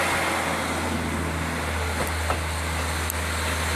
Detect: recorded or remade recorded